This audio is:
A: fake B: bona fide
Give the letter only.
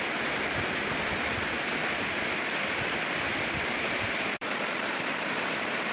A